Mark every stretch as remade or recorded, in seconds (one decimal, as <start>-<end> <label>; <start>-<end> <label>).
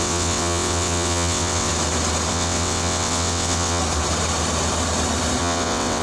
0.0-1.7 remade; 1.7-2.3 recorded; 2.3-3.8 remade; 3.8-5.4 recorded; 5.4-6.0 remade